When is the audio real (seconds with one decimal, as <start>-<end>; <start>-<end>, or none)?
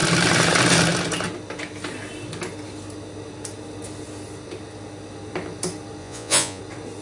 0.0-6.0; 6.6-7.0